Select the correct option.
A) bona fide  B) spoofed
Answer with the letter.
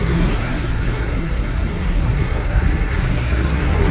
B